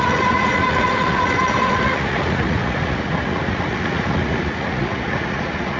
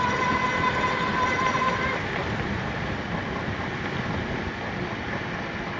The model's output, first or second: first